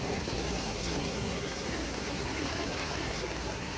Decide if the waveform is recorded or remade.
remade